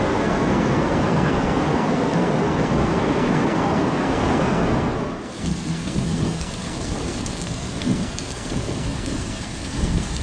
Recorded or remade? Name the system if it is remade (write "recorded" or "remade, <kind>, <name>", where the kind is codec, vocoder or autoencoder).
remade, codec, SNAC